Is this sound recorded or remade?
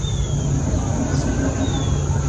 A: recorded